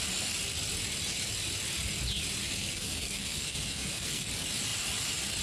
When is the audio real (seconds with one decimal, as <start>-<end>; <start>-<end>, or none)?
0.0-2.4; 4.3-5.4

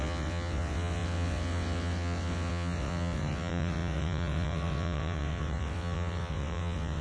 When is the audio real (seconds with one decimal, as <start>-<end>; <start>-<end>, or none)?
none

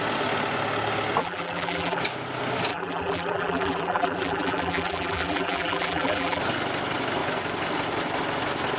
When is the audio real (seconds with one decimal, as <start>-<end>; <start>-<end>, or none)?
0.0-1.2; 2.0-2.7; 6.4-8.8

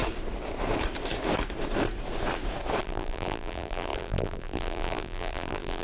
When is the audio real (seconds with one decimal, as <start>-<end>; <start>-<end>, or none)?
0.0-2.8